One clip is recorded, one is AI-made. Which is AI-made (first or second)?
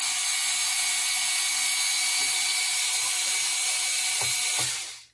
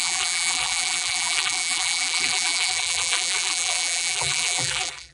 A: second